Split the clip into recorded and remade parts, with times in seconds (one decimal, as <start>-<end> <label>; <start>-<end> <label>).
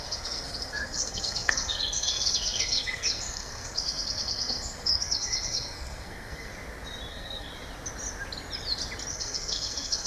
0.0-6.5 remade; 6.5-7.1 recorded; 7.1-7.5 remade; 7.5-9.1 recorded; 9.1-10.1 remade